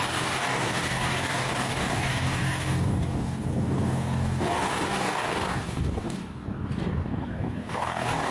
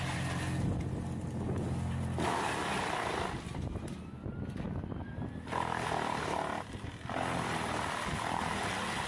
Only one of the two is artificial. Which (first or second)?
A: first